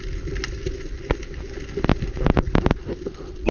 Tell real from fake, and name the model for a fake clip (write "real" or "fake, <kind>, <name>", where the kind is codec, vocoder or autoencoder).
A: real